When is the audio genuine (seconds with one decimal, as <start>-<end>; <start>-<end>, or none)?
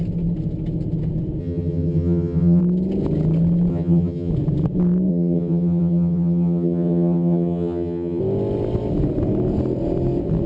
0.0-1.4; 2.6-3.7; 4.3-5.1; 8.2-10.5